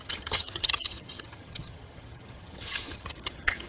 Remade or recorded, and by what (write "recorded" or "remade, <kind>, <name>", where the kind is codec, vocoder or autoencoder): remade, vocoder, HiFi-GAN